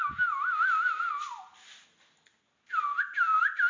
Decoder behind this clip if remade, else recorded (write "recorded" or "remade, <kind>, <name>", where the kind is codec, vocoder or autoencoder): recorded